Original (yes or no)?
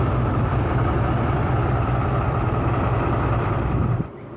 no